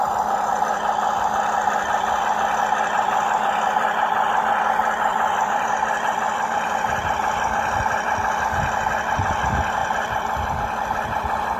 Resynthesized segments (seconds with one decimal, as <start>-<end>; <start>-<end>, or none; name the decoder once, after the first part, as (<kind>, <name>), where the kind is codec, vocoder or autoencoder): 5.1-8.2 (vocoder, BigVGAN v2); 9.8-11.6